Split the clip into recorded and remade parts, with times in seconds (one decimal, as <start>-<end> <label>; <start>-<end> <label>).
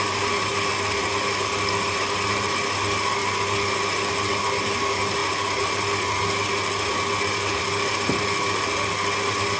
0.0-9.6 recorded